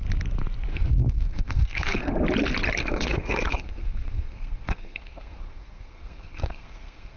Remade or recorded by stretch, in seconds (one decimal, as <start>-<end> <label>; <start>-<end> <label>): 0.0-0.7 recorded; 0.7-2.1 remade; 2.1-2.8 recorded; 2.8-7.2 remade